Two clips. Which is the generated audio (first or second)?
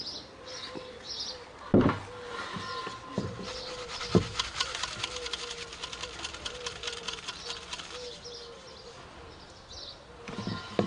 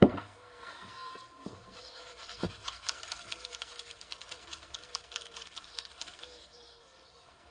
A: second